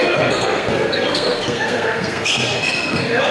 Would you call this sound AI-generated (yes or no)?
yes